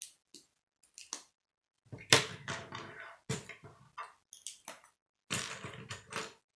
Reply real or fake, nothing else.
real